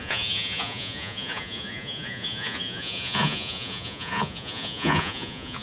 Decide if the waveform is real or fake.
fake